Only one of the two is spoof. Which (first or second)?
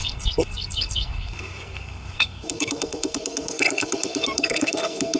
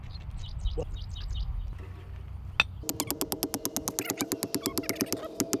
first